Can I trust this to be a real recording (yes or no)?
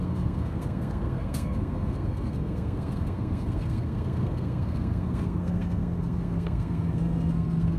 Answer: no